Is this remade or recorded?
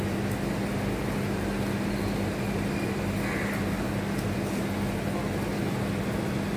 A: recorded